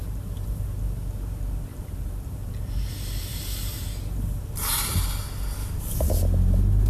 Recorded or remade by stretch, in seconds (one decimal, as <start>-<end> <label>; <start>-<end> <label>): 0.0-0.8 remade; 0.8-1.7 recorded; 1.7-2.9 remade; 2.9-5.6 recorded; 5.6-6.1 remade; 6.1-6.9 recorded